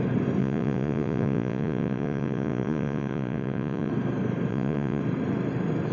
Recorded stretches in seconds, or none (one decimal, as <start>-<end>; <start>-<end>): 0.0-0.4; 3.9-4.5; 5.0-5.9

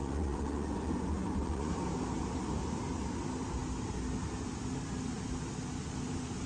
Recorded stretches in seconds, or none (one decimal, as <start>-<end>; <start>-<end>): 1.7-6.5

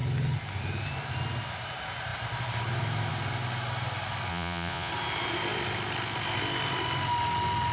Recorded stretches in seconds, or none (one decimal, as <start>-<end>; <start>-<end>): 0.0-4.3; 4.9-7.7

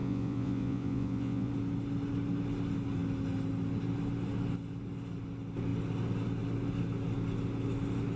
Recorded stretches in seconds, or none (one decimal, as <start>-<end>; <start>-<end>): 1.5-8.2

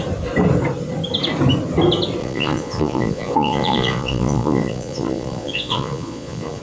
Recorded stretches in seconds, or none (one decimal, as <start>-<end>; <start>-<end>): 0.0-2.2